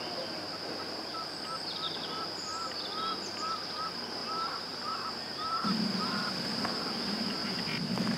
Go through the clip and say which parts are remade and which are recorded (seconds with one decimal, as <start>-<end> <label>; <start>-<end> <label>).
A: 0.0-1.1 recorded; 1.1-2.2 remade; 2.2-4.2 recorded; 4.2-6.0 remade; 6.0-8.2 recorded